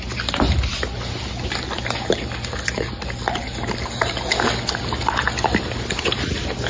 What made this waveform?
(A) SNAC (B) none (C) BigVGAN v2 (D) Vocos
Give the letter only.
B